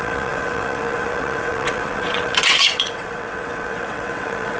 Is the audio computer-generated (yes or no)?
yes